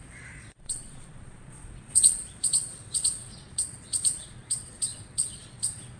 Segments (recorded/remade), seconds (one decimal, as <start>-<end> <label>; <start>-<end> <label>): 0.0-6.0 remade